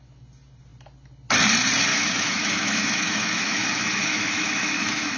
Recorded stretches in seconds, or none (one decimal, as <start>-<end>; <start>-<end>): 0.0-1.9